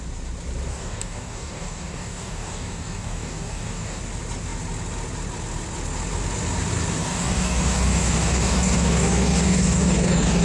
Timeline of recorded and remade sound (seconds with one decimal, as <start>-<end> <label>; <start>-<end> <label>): 0.0-0.7 recorded; 0.7-4.0 remade; 4.0-7.0 recorded; 7.0-10.4 remade